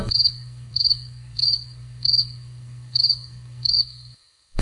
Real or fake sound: fake